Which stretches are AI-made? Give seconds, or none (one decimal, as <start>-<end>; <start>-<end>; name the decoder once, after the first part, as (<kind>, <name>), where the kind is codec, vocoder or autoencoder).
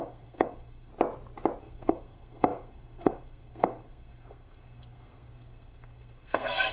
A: 0.0-0.9 (codec, SNAC); 1.6-6.7